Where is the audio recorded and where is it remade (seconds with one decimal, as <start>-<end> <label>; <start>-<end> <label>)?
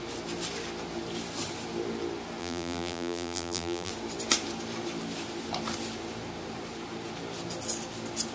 0.0-2.4 recorded; 2.4-3.9 remade; 3.9-8.3 recorded